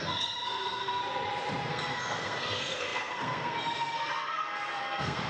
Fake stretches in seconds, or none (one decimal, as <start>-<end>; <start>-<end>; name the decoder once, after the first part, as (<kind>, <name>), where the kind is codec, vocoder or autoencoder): 0.0-1.0 (codec, SNAC); 1.7-5.3